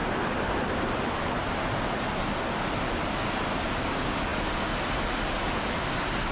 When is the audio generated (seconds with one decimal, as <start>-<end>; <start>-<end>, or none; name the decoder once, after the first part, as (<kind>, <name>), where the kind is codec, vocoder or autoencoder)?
none